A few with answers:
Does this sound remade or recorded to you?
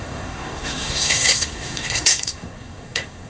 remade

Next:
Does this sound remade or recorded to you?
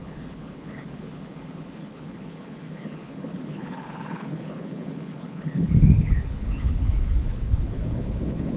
remade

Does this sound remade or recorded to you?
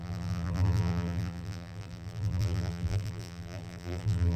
remade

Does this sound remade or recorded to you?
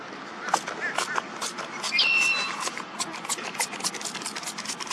recorded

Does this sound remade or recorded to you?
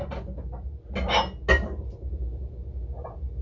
recorded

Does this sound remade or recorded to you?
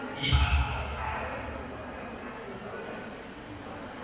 recorded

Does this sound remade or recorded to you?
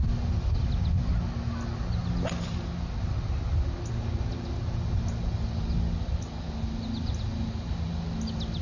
recorded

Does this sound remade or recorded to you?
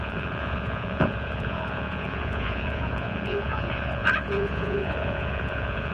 remade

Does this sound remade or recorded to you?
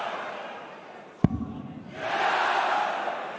remade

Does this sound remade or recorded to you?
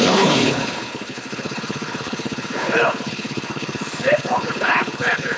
remade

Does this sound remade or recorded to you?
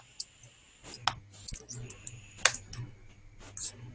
recorded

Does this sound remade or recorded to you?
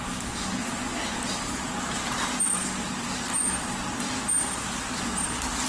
recorded